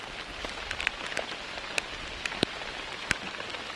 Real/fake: real